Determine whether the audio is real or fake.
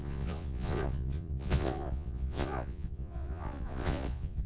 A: fake